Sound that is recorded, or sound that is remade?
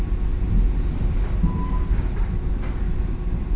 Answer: recorded